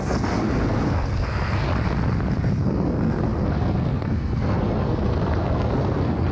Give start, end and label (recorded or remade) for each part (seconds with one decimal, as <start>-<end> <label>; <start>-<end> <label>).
0.0-1.7 remade; 1.7-2.4 recorded; 2.4-6.3 remade